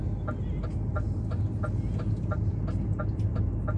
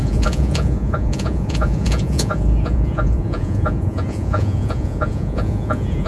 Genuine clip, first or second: first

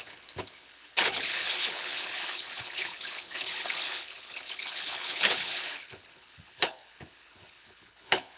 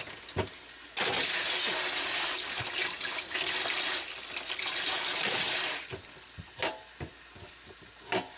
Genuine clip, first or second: second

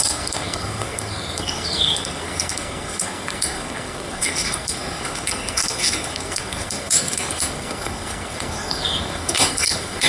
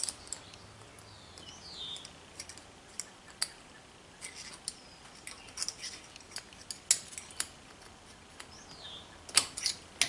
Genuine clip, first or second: second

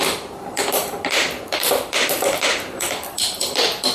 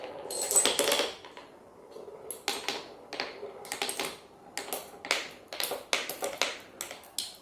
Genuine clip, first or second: second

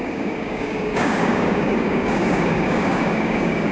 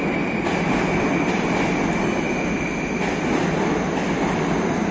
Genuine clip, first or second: second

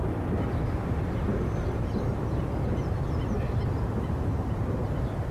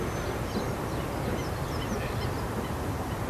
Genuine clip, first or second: second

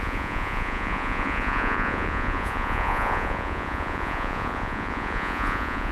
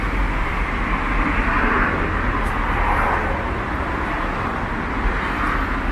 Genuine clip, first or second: second